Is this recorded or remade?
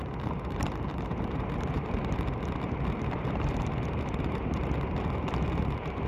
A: remade